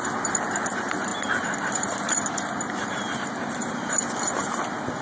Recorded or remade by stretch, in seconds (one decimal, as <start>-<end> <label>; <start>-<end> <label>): 0.0-5.0 recorded